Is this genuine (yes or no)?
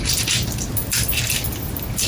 yes